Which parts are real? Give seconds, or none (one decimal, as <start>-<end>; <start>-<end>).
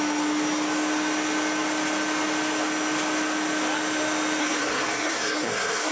0.0-4.4